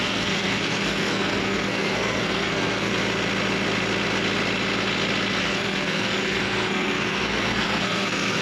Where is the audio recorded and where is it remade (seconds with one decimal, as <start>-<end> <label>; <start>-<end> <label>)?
0.0-2.9 remade; 2.9-5.4 recorded; 5.4-8.4 remade